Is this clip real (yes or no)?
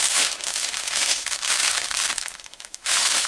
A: no